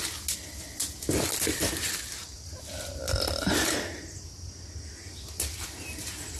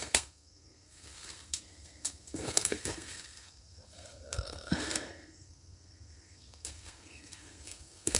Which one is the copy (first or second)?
second